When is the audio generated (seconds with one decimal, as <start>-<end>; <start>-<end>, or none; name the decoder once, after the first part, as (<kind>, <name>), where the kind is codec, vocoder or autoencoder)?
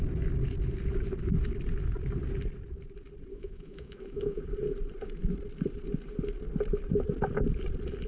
3.3-4.4 (autoencoder, DAC-VAE)